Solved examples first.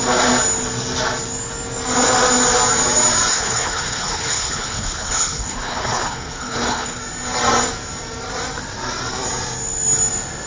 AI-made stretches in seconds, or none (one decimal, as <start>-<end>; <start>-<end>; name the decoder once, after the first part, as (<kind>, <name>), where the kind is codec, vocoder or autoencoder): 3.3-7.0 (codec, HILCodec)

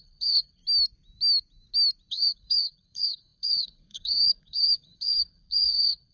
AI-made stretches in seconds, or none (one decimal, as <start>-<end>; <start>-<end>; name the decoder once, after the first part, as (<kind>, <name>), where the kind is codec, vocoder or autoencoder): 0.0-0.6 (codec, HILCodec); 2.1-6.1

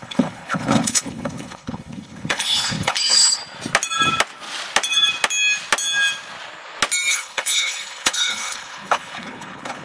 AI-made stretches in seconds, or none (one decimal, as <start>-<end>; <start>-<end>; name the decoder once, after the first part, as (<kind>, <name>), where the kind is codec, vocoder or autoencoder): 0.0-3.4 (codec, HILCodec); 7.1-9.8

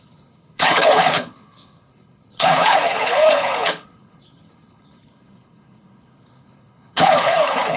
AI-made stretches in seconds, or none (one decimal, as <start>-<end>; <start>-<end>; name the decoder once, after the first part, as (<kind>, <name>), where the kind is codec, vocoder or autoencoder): 0.0-7.8 (codec, HILCodec)